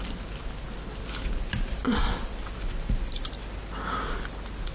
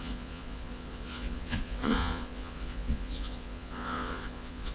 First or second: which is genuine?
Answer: first